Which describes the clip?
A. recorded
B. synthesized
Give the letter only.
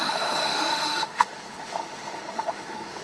B